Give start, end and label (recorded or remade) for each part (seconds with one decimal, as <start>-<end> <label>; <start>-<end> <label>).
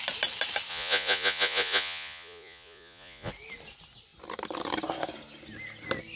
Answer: 0.0-0.7 recorded; 0.7-3.3 remade; 3.3-6.2 recorded